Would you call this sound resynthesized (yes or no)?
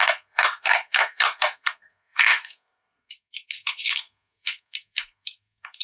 yes